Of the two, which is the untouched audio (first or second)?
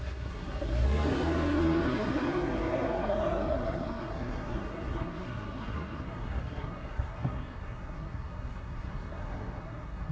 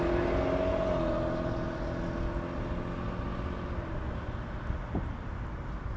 second